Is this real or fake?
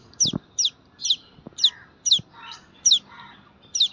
real